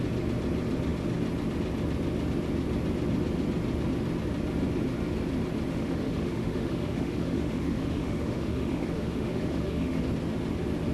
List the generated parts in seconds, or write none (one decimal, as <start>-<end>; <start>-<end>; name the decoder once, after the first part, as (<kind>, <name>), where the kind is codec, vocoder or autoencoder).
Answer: 5.7-10.0 (autoencoder, DAC-VAE)